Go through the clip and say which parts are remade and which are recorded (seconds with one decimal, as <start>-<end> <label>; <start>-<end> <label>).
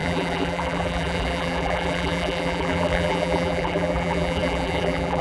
0.0-5.2 remade